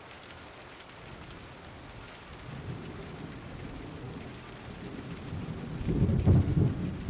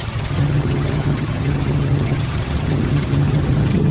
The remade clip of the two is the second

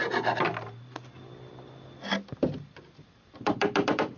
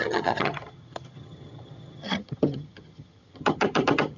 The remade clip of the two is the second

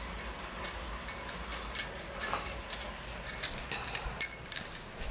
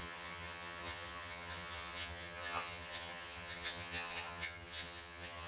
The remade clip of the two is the second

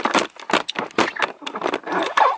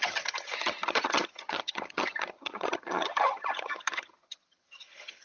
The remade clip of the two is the second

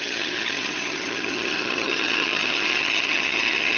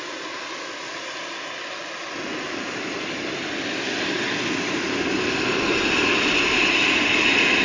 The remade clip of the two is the first